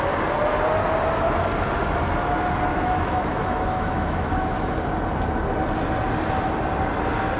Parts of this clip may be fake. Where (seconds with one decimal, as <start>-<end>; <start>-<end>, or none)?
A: 2.7-4.7